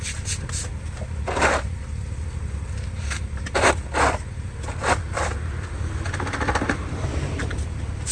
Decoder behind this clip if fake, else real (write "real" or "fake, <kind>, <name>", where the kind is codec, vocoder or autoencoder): real